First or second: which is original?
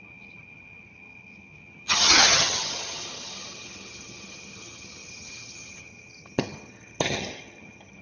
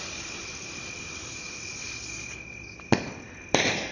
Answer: second